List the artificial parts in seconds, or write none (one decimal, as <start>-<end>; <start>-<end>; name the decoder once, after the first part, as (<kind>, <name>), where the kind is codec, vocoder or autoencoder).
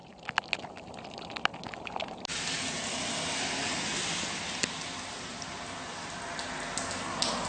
none